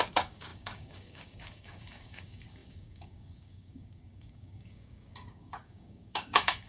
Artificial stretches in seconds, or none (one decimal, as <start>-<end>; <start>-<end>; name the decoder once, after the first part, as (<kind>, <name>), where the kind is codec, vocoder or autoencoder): 0.0-6.7 (codec, DAC)